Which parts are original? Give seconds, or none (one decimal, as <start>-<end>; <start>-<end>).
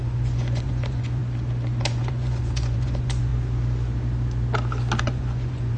1.2-1.8; 3.3-5.0